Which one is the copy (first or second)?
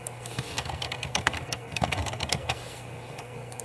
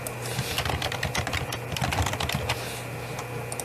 first